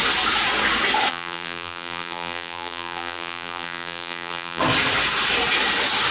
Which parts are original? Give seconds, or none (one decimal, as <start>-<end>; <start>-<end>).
0.0-1.1; 4.6-6.1